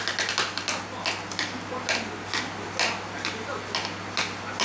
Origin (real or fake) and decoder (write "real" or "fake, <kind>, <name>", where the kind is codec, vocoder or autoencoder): real